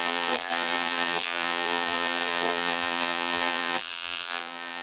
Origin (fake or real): fake